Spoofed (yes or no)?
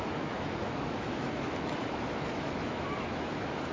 yes